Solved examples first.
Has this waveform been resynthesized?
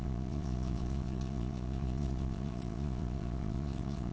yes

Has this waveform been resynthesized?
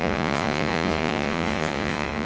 yes